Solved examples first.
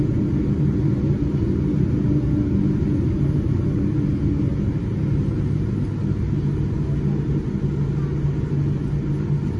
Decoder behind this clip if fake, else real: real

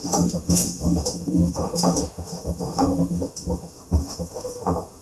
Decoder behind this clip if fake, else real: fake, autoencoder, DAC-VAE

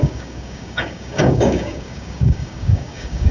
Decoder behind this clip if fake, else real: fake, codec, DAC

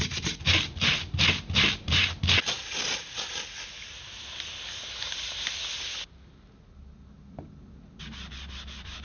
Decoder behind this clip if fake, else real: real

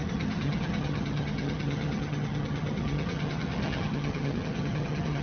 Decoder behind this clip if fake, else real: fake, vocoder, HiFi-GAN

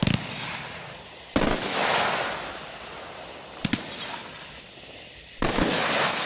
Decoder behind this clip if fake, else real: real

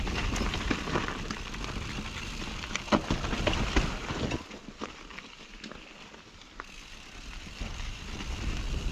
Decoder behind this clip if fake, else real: real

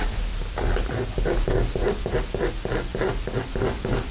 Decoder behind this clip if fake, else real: real